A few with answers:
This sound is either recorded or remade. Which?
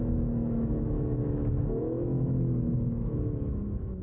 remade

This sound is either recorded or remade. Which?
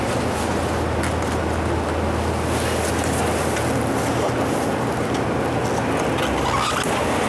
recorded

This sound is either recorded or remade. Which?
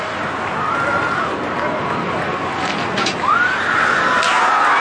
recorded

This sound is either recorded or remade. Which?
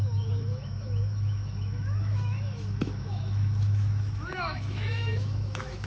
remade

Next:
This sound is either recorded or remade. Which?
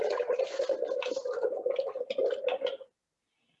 recorded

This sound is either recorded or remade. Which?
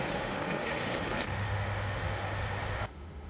remade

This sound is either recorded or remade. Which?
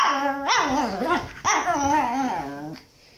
recorded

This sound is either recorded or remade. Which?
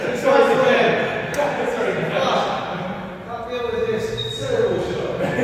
recorded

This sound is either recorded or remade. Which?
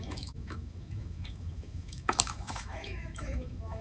remade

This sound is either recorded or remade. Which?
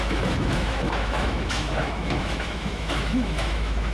remade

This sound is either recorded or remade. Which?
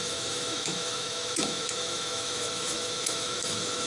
remade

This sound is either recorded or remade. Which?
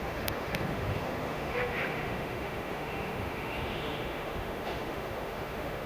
remade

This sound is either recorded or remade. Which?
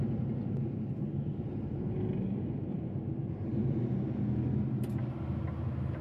recorded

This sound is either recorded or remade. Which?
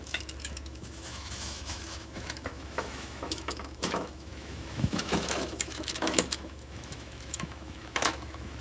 remade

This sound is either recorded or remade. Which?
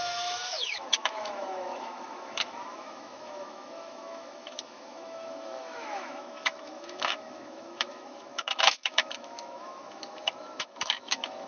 remade